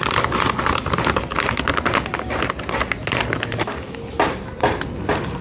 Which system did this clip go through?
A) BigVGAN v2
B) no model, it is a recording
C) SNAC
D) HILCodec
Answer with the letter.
B